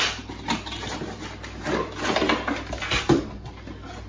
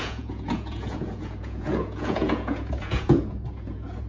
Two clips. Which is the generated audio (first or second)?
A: second